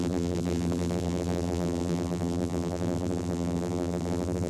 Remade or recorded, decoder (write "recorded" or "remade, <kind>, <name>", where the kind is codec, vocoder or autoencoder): remade, vocoder, BigVGAN v2